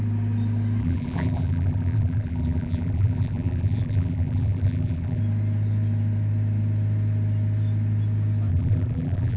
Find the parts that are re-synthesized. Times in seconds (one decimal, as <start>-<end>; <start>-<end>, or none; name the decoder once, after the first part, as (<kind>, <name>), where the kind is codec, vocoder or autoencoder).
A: 0.8-5.2 (vocoder, BigVGAN v2); 8.5-9.4